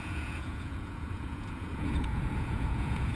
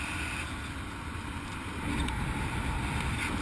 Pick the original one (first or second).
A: second